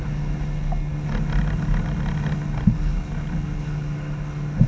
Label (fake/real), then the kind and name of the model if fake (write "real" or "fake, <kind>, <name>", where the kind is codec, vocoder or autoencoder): real